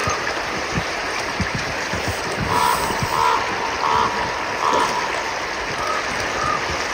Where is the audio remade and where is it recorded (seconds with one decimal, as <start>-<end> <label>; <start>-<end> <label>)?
0.0-2.6 remade; 2.6-6.9 recorded